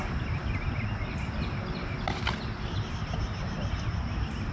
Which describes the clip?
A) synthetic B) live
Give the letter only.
B